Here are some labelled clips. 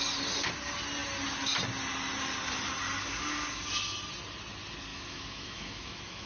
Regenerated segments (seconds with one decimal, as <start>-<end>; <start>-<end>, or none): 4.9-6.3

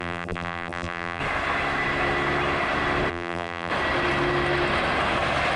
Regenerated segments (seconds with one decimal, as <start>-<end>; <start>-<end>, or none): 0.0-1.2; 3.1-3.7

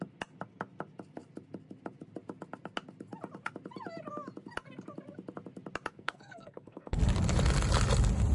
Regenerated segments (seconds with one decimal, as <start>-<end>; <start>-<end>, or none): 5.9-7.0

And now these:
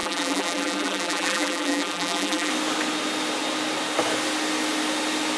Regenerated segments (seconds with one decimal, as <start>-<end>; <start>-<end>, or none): 0.0-2.5

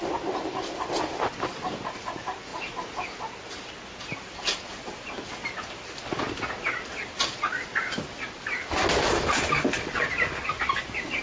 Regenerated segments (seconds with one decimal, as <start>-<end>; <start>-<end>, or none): none

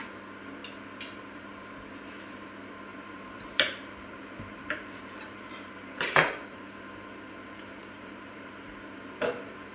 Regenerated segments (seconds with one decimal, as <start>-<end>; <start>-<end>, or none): 2.9-6.7; 7.8-8.5